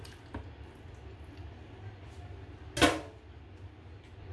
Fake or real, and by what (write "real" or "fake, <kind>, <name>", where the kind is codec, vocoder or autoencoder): real